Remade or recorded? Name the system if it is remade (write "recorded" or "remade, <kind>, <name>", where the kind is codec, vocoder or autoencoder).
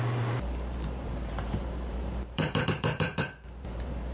remade, vocoder, BigVGAN v2